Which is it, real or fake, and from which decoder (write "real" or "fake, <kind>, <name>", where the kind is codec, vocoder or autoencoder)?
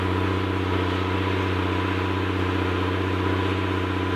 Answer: real